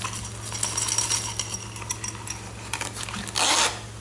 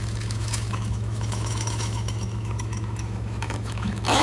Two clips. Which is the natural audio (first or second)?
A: first